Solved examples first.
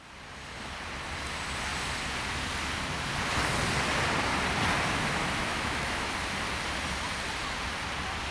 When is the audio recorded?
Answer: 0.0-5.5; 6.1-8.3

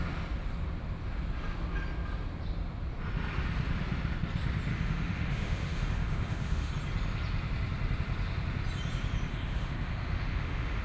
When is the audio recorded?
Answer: 0.0-4.7; 6.7-9.3

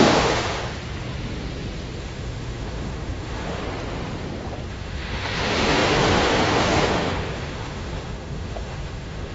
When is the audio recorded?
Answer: 0.6-2.0; 3.6-4.7

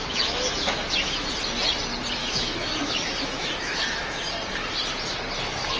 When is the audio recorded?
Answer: 1.3-2.2; 4.3-5.8

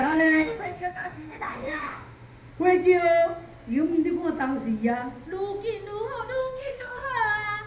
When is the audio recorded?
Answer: 2.5-6.4; 7.1-7.7

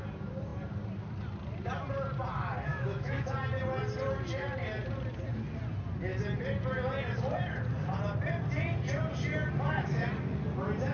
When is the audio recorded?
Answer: 0.0-2.7; 3.3-10.9

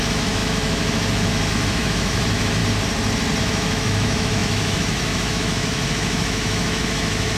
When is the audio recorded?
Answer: 2.6-3.4